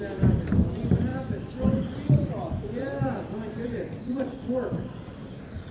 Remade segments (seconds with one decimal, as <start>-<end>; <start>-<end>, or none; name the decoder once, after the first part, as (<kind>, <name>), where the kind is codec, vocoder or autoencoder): 1.1-4.5 (vocoder, BigVGAN v2)